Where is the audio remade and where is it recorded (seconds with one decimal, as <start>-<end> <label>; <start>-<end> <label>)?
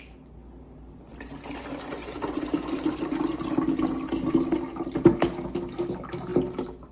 0.0-6.9 recorded